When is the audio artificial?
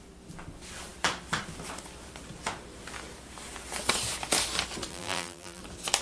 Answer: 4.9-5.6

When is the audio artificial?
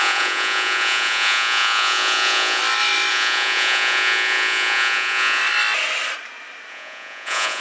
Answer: 0.0-2.6; 3.1-5.4; 6.7-7.6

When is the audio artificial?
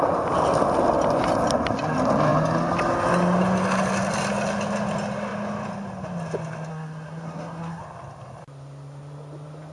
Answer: 6.7-7.8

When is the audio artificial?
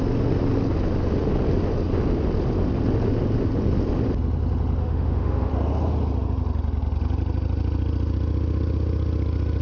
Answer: 4.8-5.5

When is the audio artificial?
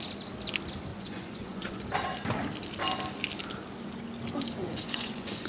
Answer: 0.9-1.8; 4.6-5.5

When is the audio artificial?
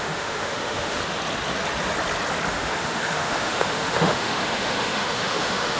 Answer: 0.0-1.0; 2.5-5.8